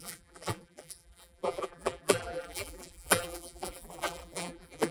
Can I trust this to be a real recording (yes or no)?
no